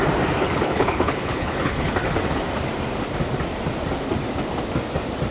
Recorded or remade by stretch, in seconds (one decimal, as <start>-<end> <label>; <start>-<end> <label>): 0.0-0.4 recorded; 0.4-1.9 remade; 1.9-5.3 recorded